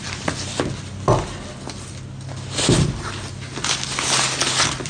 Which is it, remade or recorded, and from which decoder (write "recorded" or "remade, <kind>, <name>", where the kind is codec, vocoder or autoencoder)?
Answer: recorded